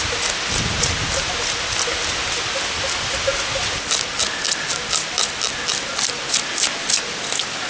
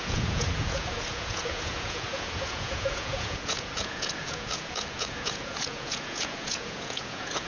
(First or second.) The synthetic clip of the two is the second